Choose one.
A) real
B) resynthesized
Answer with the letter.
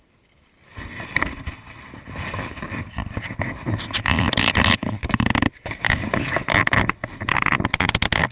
A